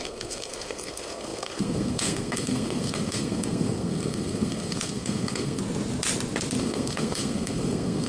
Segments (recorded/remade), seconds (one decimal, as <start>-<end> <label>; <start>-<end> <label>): 0.0-5.6 remade; 5.6-6.6 recorded; 6.6-8.1 remade